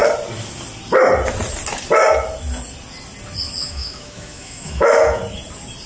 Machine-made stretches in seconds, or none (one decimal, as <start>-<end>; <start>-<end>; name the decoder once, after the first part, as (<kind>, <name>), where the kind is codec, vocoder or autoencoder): 3.6-5.2 (autoencoder, DAC-VAE)